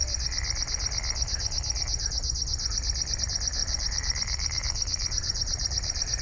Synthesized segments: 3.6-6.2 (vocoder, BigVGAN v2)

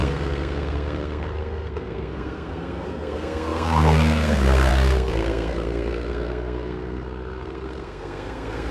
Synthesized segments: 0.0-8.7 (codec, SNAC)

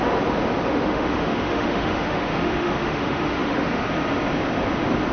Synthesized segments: 0.7-3.8 (autoencoder, DAC-VAE)